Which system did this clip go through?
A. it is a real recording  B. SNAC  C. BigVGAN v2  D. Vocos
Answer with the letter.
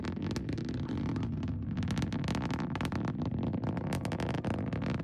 A